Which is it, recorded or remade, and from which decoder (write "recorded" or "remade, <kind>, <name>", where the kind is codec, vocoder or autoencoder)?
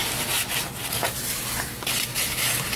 recorded